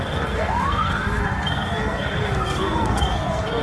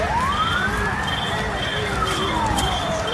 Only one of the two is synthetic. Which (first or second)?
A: first